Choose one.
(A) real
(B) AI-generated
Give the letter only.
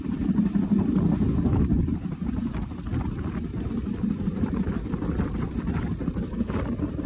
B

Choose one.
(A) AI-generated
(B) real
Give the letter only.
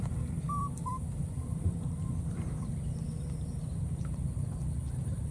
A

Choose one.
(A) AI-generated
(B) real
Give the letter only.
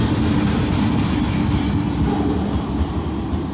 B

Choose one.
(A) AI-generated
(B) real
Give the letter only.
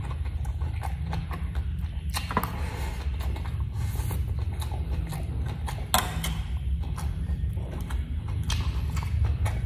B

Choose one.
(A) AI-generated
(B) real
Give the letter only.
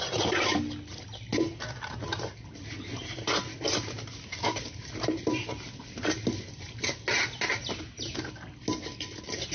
B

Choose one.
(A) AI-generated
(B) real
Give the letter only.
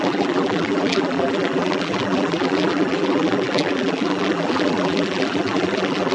A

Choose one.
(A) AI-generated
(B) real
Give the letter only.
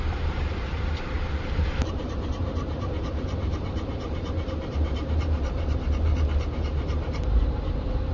A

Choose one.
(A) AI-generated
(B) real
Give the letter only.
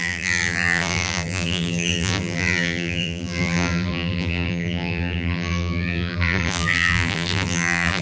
A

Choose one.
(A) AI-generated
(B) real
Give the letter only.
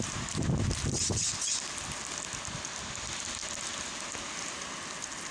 B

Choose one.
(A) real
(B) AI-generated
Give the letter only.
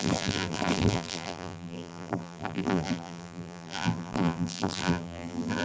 B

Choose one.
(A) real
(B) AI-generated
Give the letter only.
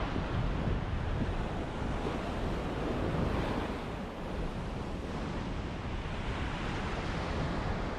A